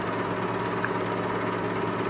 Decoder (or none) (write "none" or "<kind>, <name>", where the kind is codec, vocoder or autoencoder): none